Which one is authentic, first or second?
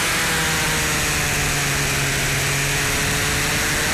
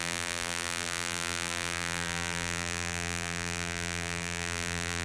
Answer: first